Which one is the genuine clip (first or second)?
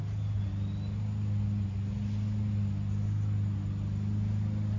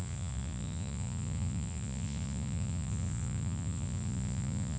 first